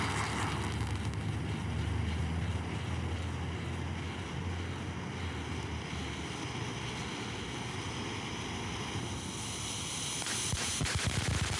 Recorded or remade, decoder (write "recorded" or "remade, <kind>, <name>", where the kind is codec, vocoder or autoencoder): recorded